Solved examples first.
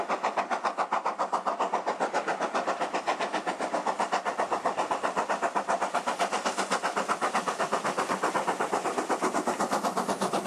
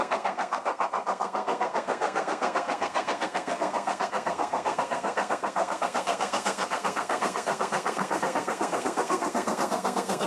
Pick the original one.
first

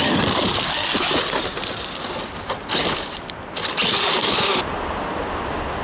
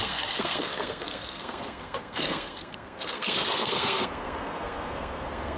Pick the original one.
first